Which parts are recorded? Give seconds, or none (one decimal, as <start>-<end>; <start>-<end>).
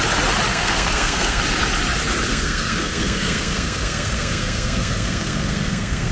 0.0-0.5; 1.4-2.3